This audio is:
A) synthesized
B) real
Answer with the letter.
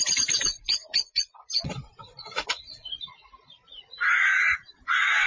A